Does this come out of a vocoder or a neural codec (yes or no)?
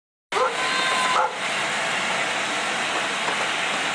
no